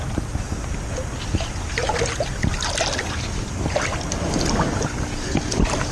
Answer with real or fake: real